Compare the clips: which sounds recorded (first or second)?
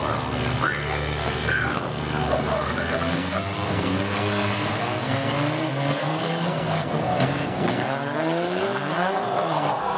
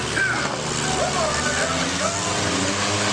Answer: second